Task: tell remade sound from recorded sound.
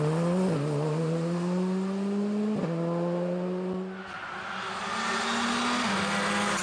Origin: recorded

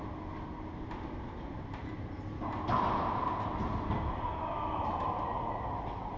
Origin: recorded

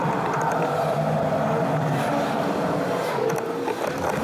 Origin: recorded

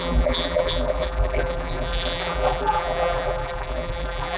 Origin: remade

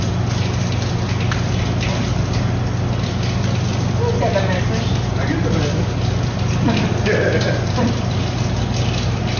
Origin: recorded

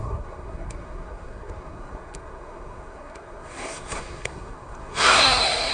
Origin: remade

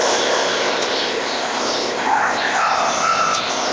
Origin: remade